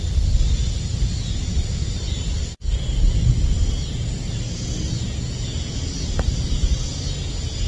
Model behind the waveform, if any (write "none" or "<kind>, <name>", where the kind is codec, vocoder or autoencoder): none